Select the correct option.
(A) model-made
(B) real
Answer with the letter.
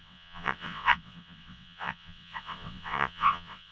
A